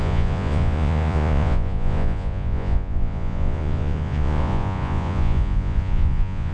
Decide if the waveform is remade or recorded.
remade